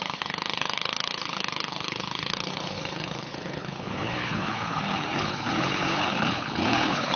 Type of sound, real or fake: fake